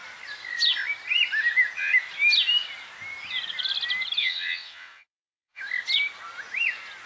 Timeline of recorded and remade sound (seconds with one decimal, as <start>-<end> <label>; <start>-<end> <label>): 0.0-4.2 recorded; 4.2-5.6 remade; 5.6-7.1 recorded